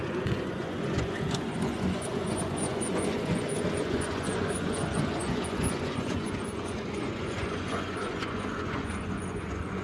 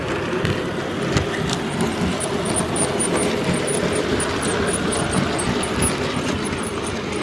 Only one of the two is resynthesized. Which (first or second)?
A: first